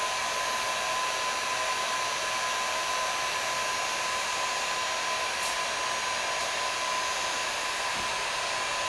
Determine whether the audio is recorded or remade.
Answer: recorded